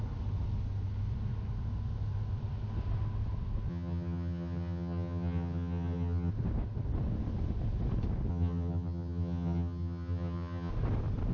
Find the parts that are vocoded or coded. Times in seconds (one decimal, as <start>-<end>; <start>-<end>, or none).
3.7-6.3; 8.3-10.7